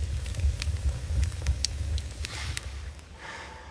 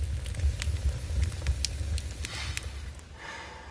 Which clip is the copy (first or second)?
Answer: first